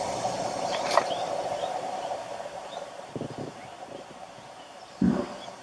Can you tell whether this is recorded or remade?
remade